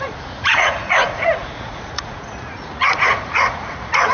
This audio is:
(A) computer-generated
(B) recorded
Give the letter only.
A